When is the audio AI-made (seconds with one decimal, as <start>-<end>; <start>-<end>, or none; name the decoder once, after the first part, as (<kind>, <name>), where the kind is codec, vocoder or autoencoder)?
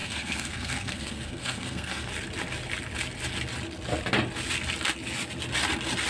0.0-2.1 (codec, SNAC)